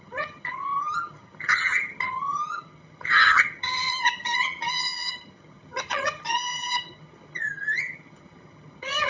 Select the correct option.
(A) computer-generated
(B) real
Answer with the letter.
A